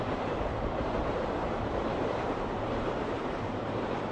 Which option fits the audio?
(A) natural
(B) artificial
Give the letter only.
B